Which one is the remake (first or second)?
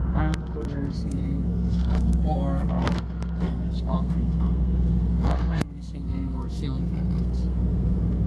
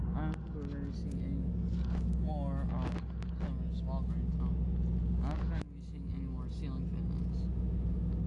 first